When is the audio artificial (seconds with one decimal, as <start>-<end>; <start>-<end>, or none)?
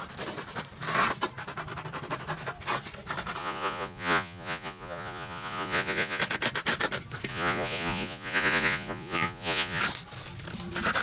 3.4-6.2; 7.3-9.8